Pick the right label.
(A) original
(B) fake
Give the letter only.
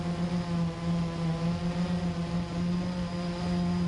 A